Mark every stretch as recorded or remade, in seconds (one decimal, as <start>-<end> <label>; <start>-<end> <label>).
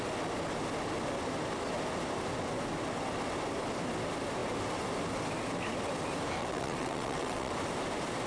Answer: 0.0-6.4 recorded; 6.4-7.5 remade; 7.5-8.3 recorded